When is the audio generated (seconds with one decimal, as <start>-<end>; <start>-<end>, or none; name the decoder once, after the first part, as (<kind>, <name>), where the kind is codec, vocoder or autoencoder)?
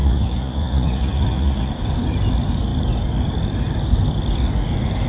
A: 0.0-1.7 (vocoder, Vocos)